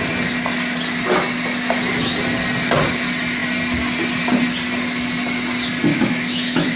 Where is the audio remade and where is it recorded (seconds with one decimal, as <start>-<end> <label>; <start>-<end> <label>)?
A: 0.0-5.9 recorded; 5.9-6.8 remade